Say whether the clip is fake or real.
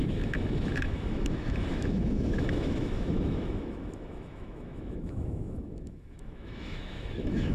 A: fake